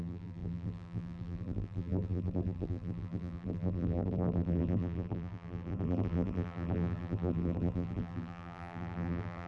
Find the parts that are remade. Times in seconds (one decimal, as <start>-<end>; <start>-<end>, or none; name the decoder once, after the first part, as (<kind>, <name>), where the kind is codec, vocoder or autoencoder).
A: 0.0-9.5 (vocoder, BigVGAN v2)